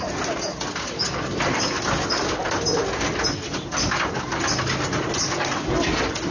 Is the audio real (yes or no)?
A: yes